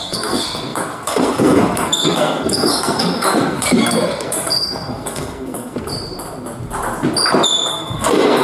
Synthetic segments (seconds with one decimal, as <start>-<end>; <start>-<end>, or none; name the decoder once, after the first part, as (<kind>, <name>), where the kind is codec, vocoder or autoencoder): 0.0-5.9 (codec, SNAC); 7.7-8.4